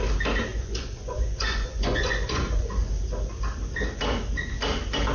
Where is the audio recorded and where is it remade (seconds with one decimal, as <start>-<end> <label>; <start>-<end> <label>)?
0.0-0.5 recorded; 0.5-2.9 remade; 2.9-5.1 recorded